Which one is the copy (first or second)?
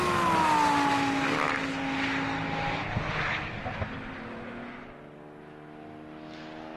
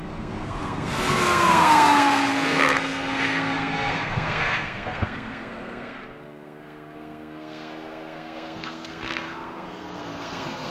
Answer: second